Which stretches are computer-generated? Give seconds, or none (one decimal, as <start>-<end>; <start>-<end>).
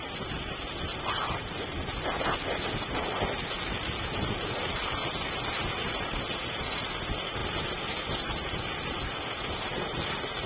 none